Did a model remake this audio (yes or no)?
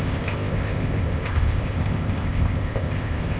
yes